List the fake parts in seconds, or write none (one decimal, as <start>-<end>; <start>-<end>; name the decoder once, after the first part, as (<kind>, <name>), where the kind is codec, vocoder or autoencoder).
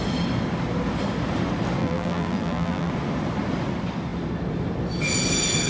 1.8-2.9 (vocoder, BigVGAN v2)